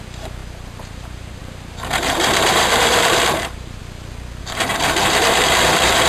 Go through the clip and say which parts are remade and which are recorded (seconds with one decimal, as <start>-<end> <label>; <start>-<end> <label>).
0.0-0.4 remade; 0.4-0.9 recorded; 0.9-3.8 remade; 3.8-4.4 recorded; 4.4-6.1 remade